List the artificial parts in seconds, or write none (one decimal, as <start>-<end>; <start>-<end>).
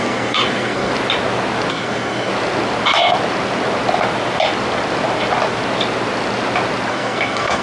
0.0-0.9; 1.7-2.3; 6.9-7.6